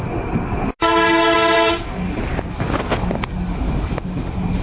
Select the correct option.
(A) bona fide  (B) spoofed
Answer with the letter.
A